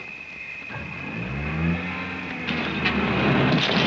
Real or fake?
real